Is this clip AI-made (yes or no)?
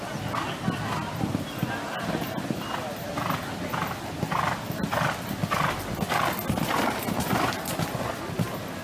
no